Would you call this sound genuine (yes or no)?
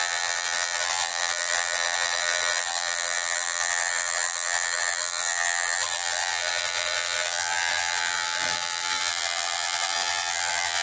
no